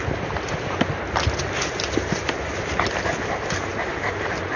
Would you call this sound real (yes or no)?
yes